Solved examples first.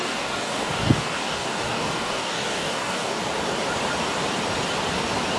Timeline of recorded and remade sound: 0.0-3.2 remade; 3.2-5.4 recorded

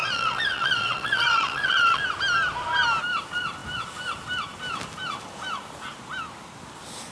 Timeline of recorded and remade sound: 0.0-2.0 remade; 2.0-7.1 recorded

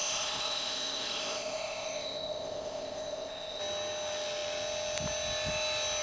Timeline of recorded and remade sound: 0.0-3.6 remade; 3.6-6.0 recorded